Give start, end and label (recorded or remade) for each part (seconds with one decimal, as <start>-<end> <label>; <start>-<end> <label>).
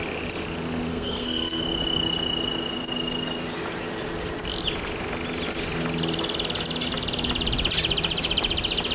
0.0-0.9 recorded; 0.9-1.6 remade; 1.6-8.9 recorded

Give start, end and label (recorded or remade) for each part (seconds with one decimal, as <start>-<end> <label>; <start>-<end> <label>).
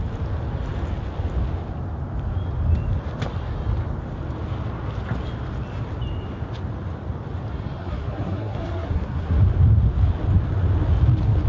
0.0-7.8 recorded; 7.8-9.4 remade; 9.4-11.5 recorded